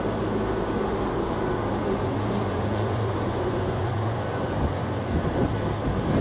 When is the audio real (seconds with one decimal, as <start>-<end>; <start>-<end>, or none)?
0.0-1.8; 5.5-6.2